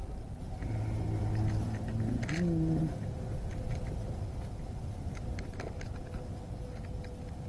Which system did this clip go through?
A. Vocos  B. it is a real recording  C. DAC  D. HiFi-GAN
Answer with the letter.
B